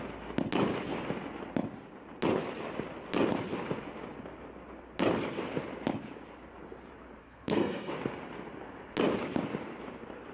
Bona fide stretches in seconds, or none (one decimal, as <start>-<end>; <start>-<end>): 0.0-7.2; 7.9-10.3